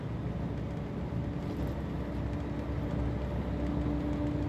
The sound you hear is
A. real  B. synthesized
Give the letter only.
A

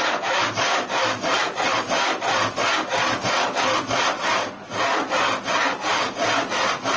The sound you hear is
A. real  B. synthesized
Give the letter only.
A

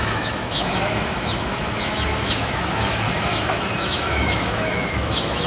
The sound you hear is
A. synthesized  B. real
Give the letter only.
A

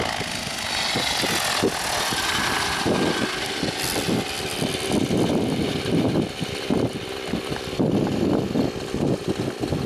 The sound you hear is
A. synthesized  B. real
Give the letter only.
B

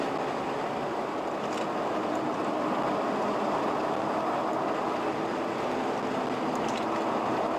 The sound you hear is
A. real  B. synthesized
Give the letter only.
A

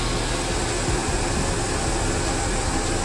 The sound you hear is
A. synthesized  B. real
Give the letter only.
B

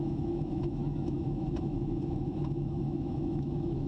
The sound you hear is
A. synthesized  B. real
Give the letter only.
A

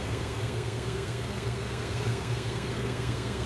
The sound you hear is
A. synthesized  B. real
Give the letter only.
A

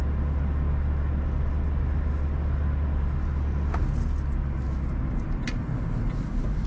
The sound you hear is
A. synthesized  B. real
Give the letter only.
B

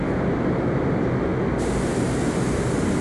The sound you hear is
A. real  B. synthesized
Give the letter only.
A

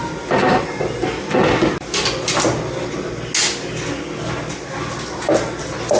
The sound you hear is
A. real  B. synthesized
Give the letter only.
A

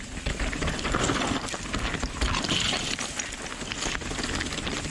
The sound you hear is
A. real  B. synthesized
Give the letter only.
A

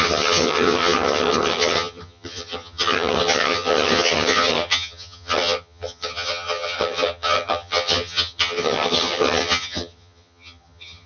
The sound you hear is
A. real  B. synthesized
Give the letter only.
B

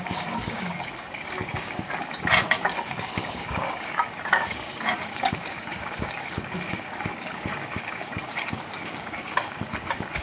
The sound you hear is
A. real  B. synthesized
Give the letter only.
B